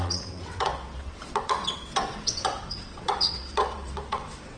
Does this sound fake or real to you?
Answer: fake